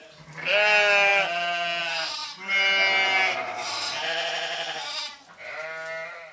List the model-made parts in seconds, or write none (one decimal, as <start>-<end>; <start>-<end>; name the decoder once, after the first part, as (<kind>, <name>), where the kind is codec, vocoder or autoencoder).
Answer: none